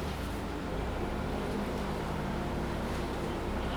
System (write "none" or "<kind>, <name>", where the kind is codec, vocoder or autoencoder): vocoder, BigVGAN v2